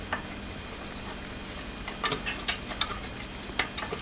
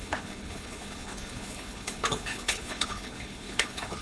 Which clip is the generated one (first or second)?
second